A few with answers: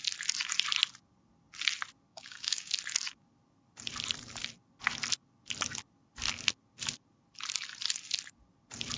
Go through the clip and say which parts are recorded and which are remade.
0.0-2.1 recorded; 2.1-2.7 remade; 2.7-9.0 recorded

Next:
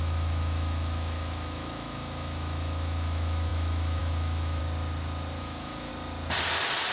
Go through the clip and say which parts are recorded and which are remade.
0.0-4.6 remade; 4.6-5.4 recorded; 5.4-5.9 remade; 5.9-6.9 recorded

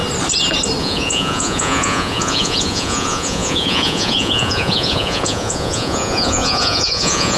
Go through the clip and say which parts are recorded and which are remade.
0.0-0.8 recorded; 0.8-7.4 remade

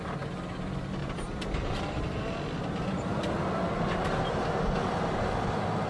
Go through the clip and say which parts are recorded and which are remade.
0.0-1.0 recorded; 1.0-2.5 remade; 2.5-5.9 recorded

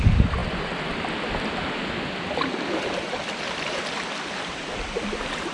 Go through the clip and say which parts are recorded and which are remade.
0.0-5.5 recorded

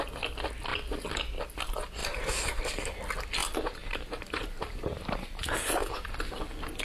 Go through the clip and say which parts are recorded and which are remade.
0.0-2.0 recorded; 2.0-2.6 remade; 2.6-3.4 recorded; 3.4-6.1 remade; 6.1-6.8 recorded

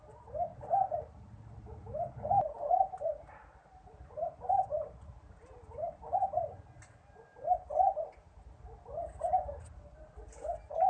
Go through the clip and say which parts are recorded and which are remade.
0.0-10.9 recorded

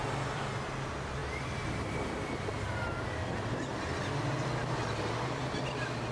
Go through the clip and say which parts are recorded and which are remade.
0.0-6.1 recorded